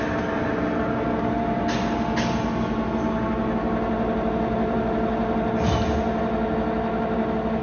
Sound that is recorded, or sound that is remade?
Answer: recorded